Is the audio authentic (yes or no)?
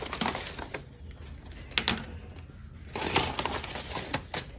yes